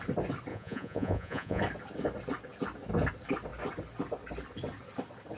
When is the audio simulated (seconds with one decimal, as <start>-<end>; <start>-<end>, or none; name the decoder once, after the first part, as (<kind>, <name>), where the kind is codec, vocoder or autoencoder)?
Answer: 0.5-1.6 (vocoder, Vocos)